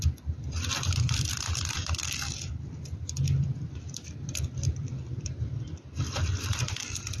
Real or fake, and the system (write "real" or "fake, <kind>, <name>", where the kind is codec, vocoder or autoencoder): fake, vocoder, BigVGAN v2